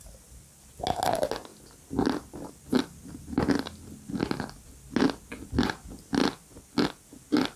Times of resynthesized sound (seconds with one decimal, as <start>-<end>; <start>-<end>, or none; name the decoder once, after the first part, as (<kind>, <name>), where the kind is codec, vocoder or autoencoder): none